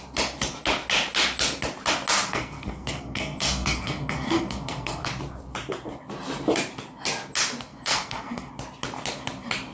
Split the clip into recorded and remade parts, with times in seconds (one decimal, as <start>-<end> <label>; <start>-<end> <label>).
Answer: 0.0-2.3 recorded; 2.3-5.1 remade; 5.1-7.7 recorded; 7.7-8.5 remade; 8.5-9.7 recorded